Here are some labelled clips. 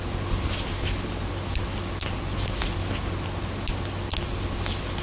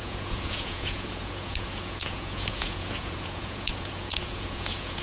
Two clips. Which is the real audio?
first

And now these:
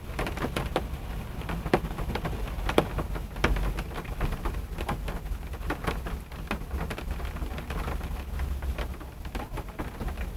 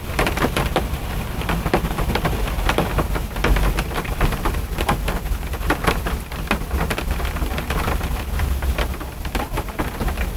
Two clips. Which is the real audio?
first